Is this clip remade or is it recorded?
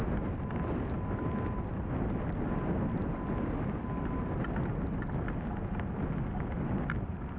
recorded